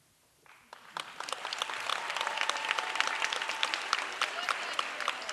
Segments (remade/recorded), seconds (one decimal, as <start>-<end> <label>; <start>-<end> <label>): 0.0-5.3 recorded